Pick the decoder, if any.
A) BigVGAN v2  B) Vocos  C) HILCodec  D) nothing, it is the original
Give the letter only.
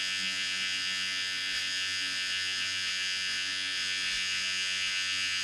B